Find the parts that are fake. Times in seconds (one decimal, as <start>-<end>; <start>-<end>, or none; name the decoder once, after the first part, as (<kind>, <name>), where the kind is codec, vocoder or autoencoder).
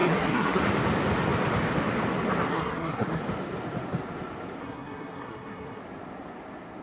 0.0-0.6 (codec, SNAC); 2.5-3.2; 4.6-5.8